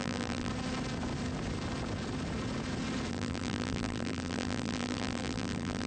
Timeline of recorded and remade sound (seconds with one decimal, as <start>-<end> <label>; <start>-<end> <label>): 0.0-0.5 remade; 0.5-3.1 recorded; 3.1-5.9 remade